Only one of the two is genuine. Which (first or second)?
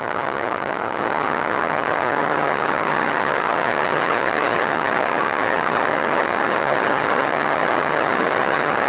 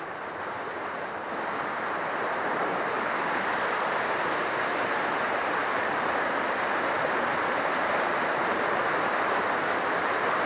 second